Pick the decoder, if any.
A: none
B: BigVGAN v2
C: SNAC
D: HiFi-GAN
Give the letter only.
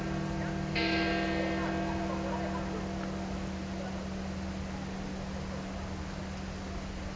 A